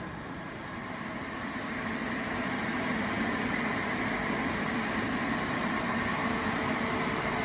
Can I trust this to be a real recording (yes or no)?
no